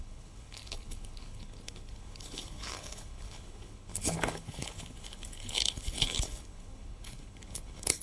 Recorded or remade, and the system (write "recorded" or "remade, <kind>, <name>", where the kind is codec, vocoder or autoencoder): remade, codec, HILCodec